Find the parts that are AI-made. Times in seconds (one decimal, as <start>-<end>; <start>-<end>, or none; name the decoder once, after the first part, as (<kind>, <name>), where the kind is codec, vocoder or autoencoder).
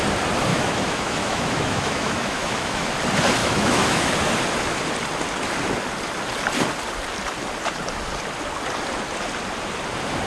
0.5-2.9 (autoencoder, DAC-VAE); 3.4-4.1